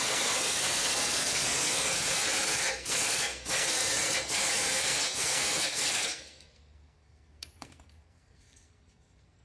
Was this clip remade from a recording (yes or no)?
yes